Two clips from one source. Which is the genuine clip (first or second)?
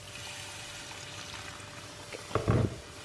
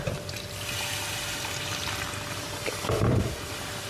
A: first